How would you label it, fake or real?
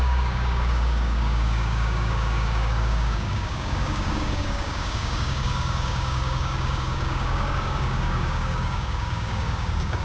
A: fake